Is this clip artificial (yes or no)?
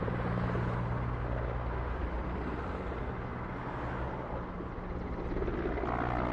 no